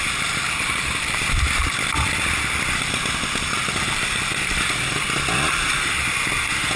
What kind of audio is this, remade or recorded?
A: recorded